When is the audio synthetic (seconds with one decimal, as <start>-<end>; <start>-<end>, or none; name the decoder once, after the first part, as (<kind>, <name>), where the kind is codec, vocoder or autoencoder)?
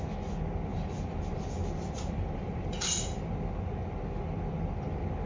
0.7-3.2 (vocoder, BigVGAN v2)